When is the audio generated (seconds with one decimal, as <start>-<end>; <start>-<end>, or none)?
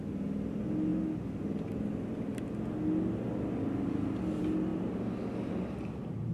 none